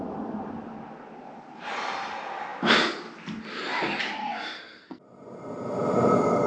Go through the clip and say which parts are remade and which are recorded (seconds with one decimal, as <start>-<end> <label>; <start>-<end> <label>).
0.0-4.2 recorded; 4.2-5.0 remade; 5.0-6.5 recorded